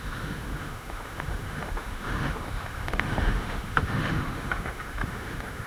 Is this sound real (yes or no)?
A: no